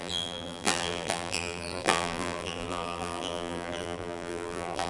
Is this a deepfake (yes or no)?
yes